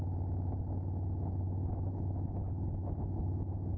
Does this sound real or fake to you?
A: real